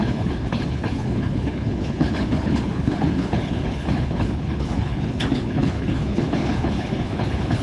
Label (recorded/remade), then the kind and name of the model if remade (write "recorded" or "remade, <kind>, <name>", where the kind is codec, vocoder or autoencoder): remade, codec, HILCodec